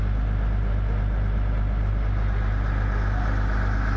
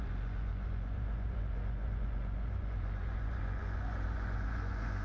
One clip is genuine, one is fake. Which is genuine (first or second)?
first